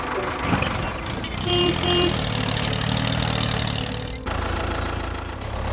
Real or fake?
real